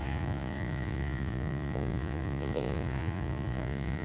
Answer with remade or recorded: remade